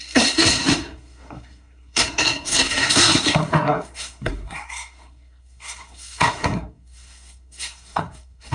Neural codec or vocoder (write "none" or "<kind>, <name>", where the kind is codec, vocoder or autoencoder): codec, SNAC